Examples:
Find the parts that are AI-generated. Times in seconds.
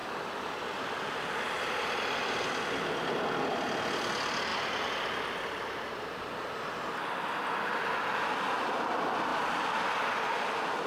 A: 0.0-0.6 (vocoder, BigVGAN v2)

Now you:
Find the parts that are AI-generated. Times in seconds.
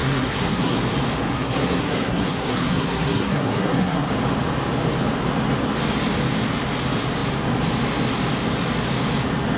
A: 0.0-0.8 (codec, SNAC); 1.3-4.1